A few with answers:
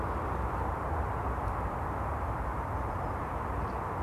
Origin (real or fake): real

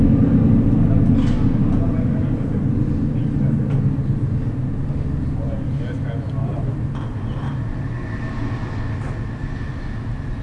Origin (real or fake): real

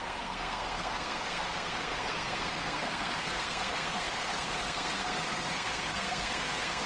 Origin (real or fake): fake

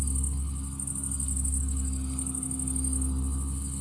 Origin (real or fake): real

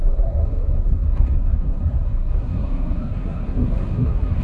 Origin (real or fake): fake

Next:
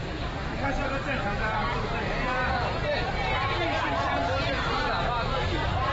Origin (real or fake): real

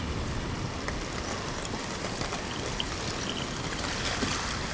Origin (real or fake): real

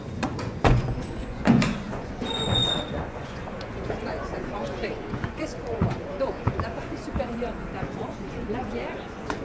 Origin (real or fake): fake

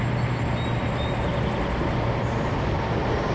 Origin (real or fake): real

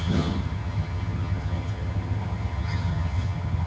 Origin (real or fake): fake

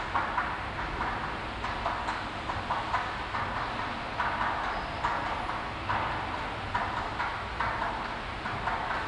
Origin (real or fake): real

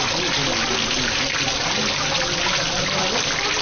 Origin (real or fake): real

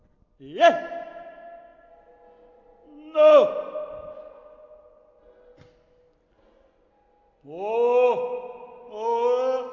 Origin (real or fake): real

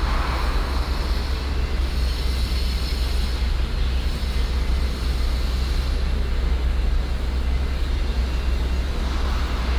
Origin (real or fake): real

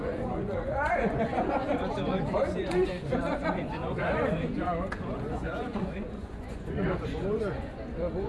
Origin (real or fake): fake